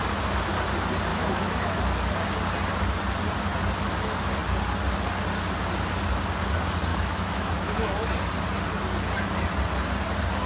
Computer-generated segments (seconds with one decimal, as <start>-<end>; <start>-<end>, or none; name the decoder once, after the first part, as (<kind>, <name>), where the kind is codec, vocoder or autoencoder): 1.1-1.8 (autoencoder, DAC-VAE); 6.9-8.1